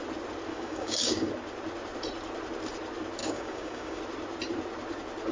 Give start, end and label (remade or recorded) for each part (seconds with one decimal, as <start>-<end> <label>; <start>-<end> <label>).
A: 0.0-0.5 recorded; 0.5-1.3 remade; 1.3-3.2 recorded; 3.2-4.0 remade; 4.0-5.3 recorded